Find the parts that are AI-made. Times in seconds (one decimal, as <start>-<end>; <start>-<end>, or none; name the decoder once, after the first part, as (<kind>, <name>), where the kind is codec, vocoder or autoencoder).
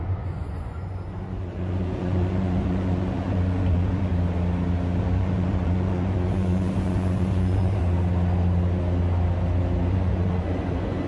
0.0-4.1 (vocoder, Vocos); 5.0-7.8; 9.9-11.1